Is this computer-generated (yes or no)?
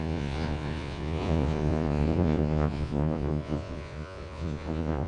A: yes